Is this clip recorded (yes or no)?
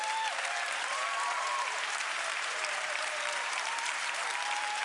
no